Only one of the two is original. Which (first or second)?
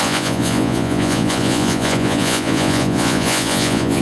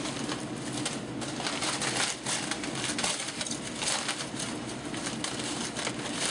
second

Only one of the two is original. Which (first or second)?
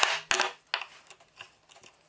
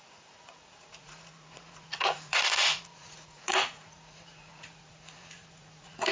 first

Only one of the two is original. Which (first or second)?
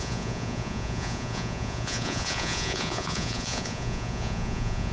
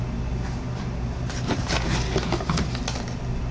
second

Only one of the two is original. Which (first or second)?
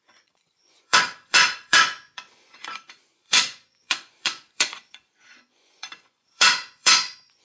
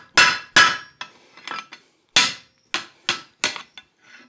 second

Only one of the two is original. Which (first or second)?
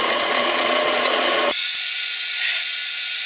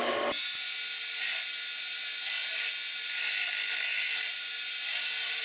second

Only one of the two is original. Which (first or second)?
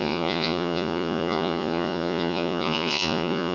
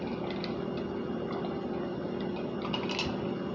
second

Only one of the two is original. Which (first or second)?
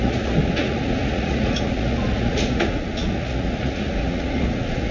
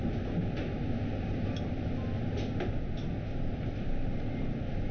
second